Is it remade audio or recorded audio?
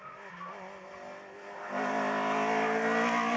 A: recorded